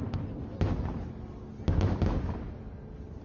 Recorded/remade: recorded